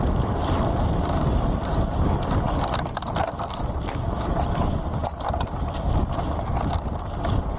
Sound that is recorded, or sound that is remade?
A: recorded